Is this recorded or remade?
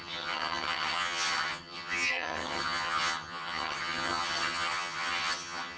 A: remade